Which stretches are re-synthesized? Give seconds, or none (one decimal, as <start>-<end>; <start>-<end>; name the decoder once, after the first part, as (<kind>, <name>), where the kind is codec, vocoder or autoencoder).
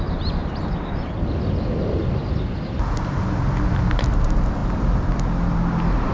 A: none